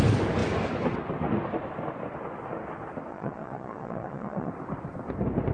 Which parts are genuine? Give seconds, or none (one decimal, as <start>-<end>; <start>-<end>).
0.0-3.1; 4.5-5.5